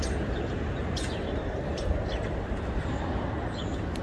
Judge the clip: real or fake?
fake